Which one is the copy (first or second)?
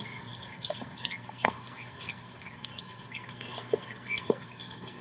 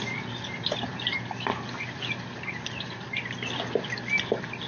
first